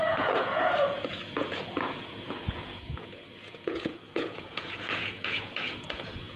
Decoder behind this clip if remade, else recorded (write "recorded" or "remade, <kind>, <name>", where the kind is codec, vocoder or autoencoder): remade, vocoder, Vocos